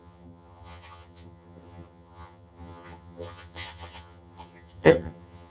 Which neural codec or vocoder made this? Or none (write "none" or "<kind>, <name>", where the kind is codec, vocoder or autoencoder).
vocoder, HiFi-GAN